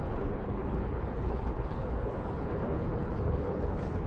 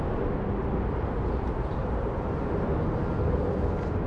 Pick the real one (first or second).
second